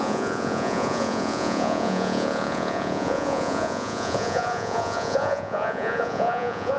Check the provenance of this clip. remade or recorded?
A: remade